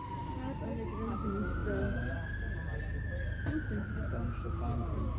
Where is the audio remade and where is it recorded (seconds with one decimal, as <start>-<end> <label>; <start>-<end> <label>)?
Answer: 0.0-5.2 recorded